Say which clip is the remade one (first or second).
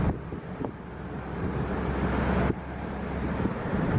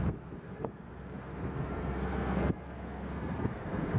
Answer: second